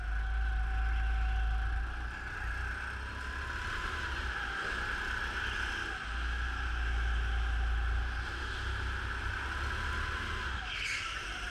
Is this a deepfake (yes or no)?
no